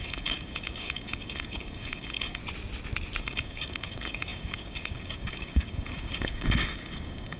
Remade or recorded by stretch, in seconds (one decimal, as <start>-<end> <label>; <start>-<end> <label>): 0.0-2.4 remade; 2.4-3.2 recorded; 3.2-7.4 remade